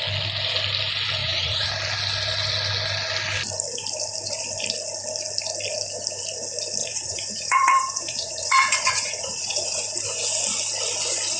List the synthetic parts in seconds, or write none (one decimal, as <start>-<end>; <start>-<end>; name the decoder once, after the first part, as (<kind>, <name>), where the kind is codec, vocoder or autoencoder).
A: 1.2-1.7 (vocoder, Vocos); 6.8-9.8